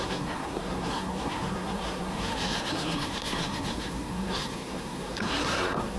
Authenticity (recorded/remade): remade